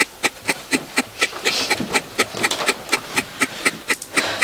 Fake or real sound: fake